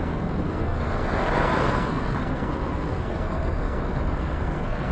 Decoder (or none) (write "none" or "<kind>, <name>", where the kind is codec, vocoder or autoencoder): codec, SNAC